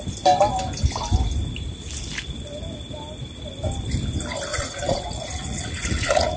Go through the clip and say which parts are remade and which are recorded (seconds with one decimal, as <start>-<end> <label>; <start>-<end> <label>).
0.0-4.5 recorded; 4.5-6.4 remade